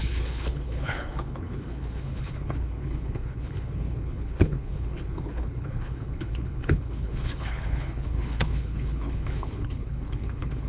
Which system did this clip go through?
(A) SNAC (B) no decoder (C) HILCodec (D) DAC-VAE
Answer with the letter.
C